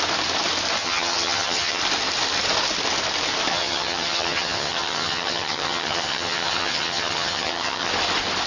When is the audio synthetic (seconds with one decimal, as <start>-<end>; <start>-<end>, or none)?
0.8-1.8; 3.5-7.9